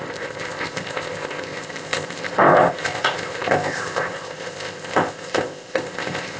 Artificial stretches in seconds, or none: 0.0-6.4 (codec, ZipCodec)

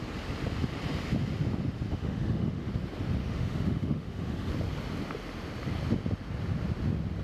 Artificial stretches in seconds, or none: 1.9-2.7 (autoencoder, DAC-VAE); 3.2-4.5

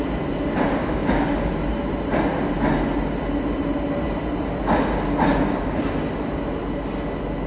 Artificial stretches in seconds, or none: 0.8-1.5 (codec, DAC); 5.3-5.8

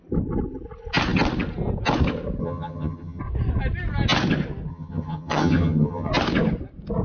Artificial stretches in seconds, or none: 2.4-3.2 (vocoder, HiFi-GAN); 4.7-6.1